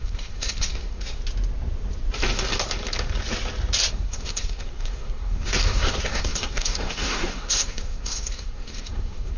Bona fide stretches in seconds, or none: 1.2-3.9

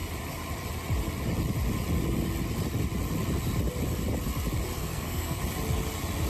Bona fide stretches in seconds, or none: 0.0-4.8; 5.4-6.3

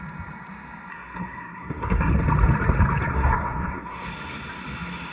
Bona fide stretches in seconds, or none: 0.0-0.9; 2.1-3.1; 4.1-5.1

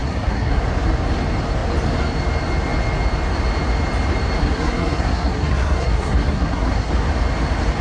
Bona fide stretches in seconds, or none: 0.6-4.4; 6.9-7.8

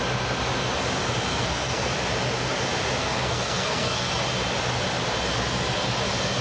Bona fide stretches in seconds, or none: 0.0-1.3; 1.9-3.0; 4.2-6.4